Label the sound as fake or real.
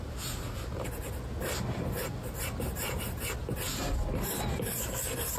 real